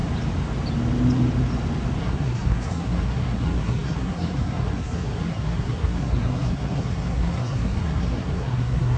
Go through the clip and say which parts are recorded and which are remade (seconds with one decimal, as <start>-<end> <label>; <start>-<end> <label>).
0.0-2.0 recorded; 2.0-9.0 remade